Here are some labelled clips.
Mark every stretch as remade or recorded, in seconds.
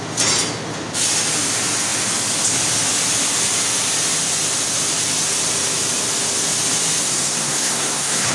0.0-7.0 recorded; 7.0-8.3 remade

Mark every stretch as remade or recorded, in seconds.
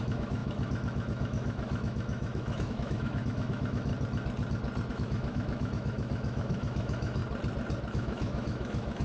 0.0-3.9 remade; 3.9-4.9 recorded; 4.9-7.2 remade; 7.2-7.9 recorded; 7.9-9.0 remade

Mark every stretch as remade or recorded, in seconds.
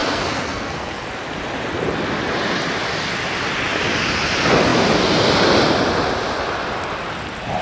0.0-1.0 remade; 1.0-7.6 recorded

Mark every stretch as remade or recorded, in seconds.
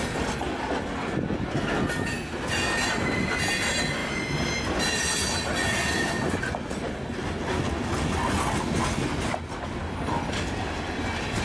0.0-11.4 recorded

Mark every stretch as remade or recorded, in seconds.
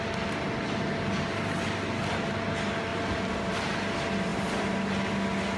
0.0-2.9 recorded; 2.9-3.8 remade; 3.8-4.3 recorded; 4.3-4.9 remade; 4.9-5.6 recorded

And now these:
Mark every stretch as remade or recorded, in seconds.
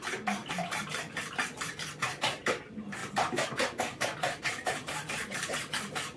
0.0-0.4 recorded; 0.4-2.6 remade; 2.6-3.0 recorded; 3.0-5.5 remade; 5.5-6.2 recorded